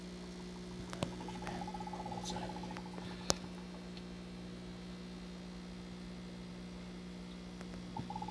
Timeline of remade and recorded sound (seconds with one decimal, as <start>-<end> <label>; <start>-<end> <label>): 0.0-8.3 recorded